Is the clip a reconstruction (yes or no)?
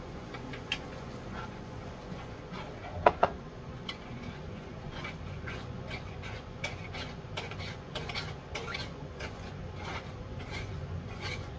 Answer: yes